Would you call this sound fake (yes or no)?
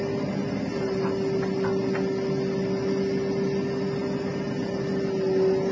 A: no